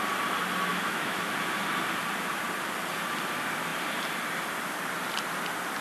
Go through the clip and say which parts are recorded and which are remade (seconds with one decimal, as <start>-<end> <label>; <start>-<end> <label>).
0.0-0.7 recorded; 0.7-1.3 remade; 1.3-5.8 recorded